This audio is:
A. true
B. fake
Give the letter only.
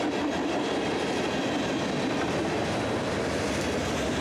A